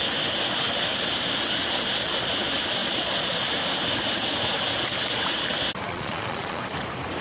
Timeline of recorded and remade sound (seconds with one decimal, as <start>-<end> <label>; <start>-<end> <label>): 0.0-2.8 recorded; 2.8-3.5 remade; 3.5-5.9 recorded; 5.9-6.6 remade; 6.6-7.2 recorded